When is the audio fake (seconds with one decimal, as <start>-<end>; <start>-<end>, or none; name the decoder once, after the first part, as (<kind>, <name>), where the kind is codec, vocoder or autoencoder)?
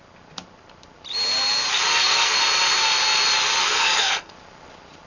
1.9-2.4 (codec, SNAC); 3.6-4.3